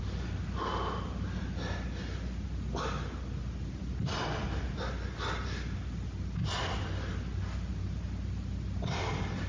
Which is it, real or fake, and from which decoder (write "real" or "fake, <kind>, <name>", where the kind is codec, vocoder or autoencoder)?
real